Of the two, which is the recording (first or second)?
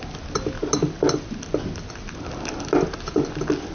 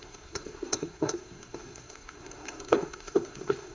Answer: first